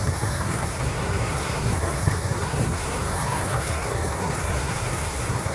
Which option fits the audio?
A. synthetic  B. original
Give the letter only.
A